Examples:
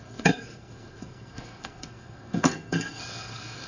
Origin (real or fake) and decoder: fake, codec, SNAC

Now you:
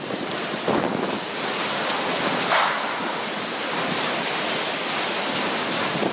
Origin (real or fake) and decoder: real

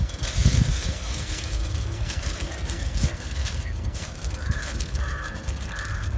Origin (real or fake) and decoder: fake, codec, SNAC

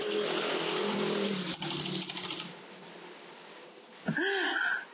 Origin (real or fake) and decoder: real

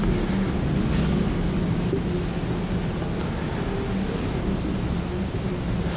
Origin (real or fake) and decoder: real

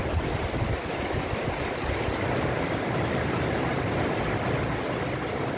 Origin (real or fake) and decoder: real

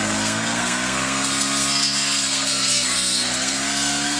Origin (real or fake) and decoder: fake, codec, SNAC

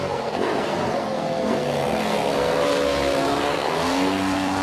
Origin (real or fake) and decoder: fake, codec, SNAC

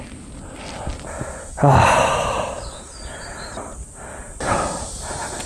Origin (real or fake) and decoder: real